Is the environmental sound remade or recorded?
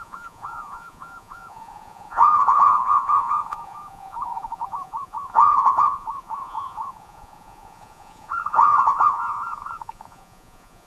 remade